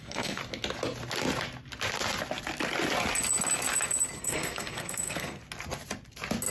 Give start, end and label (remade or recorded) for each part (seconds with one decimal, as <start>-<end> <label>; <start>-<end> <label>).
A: 0.0-0.4 remade; 0.4-4.2 recorded; 4.2-5.4 remade; 5.4-6.5 recorded